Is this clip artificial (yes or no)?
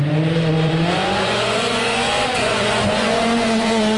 yes